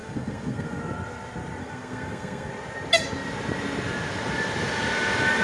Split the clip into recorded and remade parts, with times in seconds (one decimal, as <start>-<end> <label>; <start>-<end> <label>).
0.0-0.8 remade; 0.8-1.6 recorded; 1.6-2.5 remade; 2.5-5.4 recorded